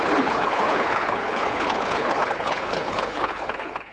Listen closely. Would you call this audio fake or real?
fake